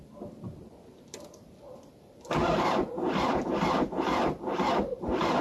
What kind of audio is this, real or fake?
fake